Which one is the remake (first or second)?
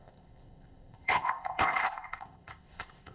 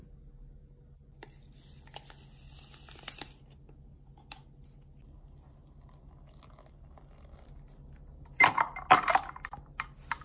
first